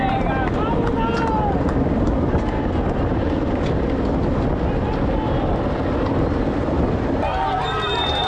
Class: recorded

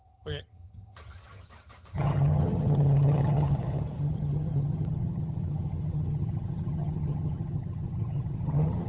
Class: remade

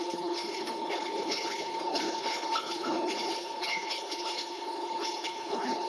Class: remade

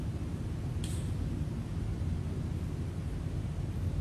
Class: recorded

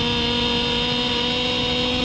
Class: recorded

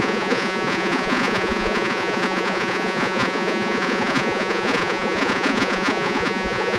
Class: remade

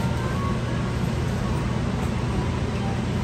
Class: recorded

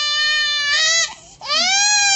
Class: recorded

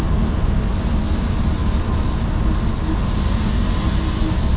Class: recorded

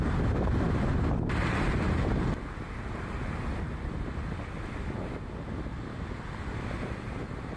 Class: recorded